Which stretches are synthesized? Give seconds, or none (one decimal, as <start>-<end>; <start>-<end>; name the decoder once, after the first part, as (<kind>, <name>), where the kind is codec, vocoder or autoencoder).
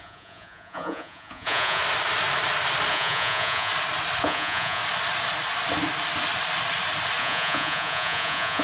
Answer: 0.0-1.8 (vocoder, Vocos); 2.9-3.7; 4.2-4.8; 7.2-8.6